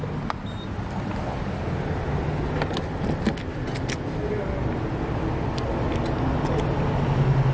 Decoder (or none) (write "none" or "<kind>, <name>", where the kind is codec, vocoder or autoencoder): none